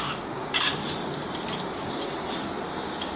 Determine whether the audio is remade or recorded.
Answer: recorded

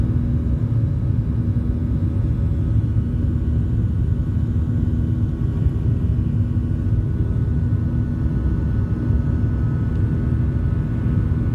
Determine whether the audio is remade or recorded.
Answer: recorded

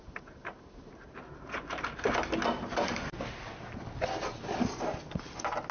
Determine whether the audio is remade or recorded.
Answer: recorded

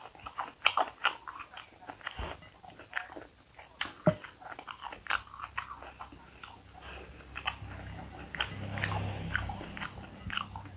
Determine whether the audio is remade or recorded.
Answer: recorded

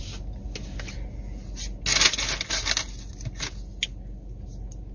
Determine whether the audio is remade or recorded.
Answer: recorded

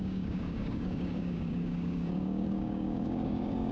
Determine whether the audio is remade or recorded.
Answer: remade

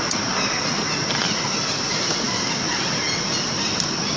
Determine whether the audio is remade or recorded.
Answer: recorded